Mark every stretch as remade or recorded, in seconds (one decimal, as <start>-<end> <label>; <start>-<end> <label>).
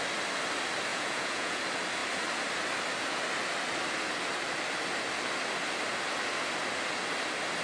0.0-0.9 recorded; 0.9-1.6 remade; 1.6-7.6 recorded